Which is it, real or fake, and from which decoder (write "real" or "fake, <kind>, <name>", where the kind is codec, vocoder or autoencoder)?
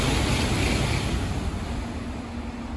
real